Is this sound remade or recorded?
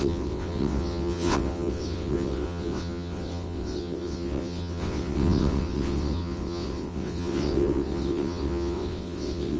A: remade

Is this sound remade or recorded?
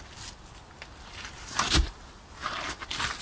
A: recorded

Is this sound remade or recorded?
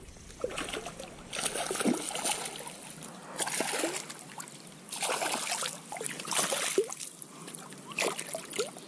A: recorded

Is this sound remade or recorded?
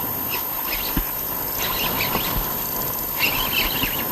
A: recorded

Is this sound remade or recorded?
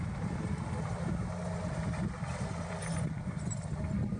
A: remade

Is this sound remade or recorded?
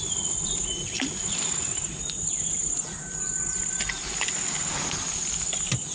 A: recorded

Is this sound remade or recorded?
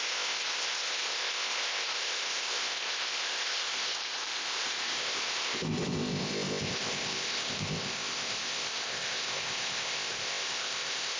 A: remade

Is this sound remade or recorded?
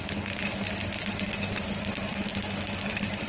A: recorded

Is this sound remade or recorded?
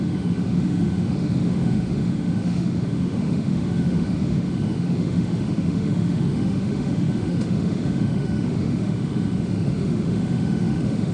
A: remade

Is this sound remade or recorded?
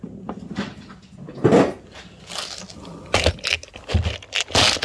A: recorded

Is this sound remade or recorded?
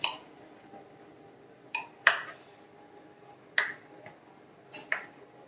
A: recorded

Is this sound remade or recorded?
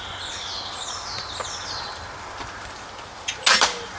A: recorded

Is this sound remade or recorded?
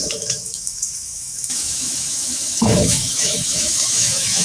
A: remade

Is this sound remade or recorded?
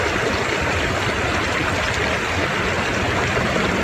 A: recorded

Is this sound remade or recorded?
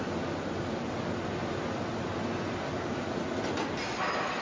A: recorded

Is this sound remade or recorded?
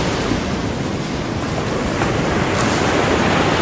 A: recorded